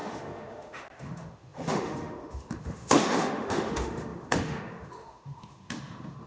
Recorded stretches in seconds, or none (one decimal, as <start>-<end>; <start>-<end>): none